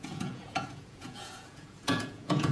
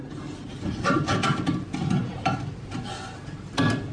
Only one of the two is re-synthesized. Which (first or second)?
first